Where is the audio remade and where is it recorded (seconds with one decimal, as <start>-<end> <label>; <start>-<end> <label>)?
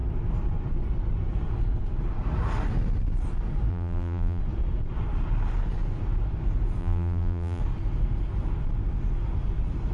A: 0.0-3.7 recorded; 3.7-4.4 remade; 4.4-6.8 recorded; 6.8-7.6 remade; 7.6-9.9 recorded